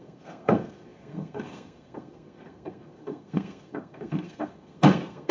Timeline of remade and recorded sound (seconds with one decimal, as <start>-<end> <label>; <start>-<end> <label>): 0.0-5.3 remade